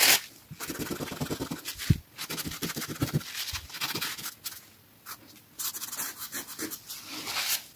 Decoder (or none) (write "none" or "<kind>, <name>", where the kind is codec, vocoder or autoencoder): none